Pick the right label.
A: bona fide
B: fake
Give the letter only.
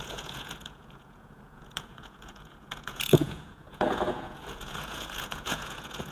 B